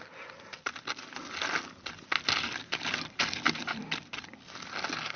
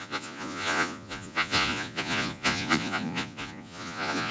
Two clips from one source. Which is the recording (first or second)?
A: first